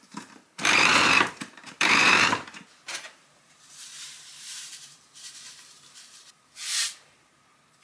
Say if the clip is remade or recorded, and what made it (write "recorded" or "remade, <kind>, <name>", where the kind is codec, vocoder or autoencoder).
remade, vocoder, BigVGAN v2